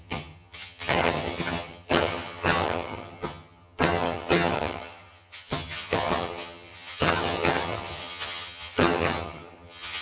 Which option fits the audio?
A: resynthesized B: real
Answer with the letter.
A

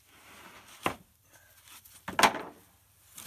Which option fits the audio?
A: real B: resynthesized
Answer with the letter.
A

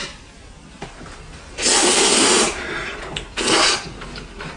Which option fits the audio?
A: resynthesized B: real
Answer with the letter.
B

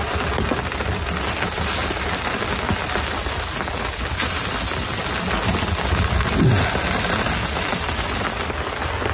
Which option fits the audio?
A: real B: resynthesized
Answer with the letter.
A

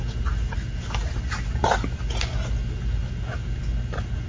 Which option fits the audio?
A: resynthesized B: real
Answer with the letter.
B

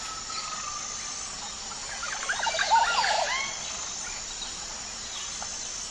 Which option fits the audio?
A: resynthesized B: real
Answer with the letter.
B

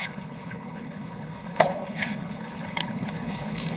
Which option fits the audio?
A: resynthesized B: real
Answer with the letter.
A